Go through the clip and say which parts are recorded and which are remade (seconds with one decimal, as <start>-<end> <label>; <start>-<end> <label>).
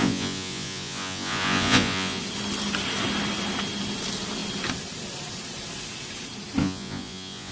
0.0-2.2 remade; 2.2-6.6 recorded; 6.6-7.5 remade